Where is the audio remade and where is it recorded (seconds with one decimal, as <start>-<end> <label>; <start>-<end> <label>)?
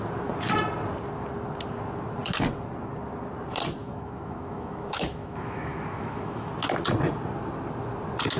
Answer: 0.0-3.8 recorded; 3.8-6.5 remade; 6.5-8.4 recorded